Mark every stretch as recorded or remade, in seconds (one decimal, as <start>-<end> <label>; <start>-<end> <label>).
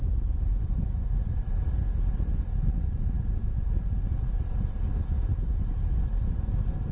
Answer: 0.0-0.5 recorded; 0.5-1.3 remade; 1.3-2.5 recorded; 2.5-6.0 remade; 6.0-6.9 recorded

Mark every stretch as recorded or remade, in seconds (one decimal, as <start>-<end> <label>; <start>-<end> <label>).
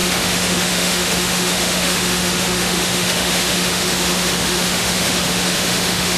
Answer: 0.0-6.2 remade